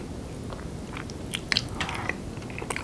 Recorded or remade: recorded